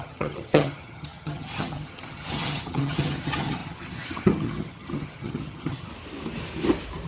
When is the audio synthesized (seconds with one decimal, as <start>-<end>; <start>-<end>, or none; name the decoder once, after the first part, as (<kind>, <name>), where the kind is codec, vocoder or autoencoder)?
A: 0.0-5.9 (vocoder, HiFi-GAN)